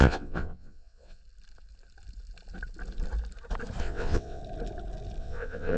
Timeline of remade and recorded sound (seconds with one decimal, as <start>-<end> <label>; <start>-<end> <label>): 0.0-1.2 remade; 1.2-3.8 recorded; 3.8-4.4 remade; 4.4-5.2 recorded; 5.2-5.8 remade